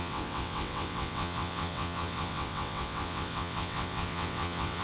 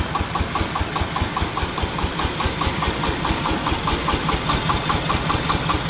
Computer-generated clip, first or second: first